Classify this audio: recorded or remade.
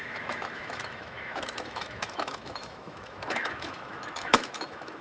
remade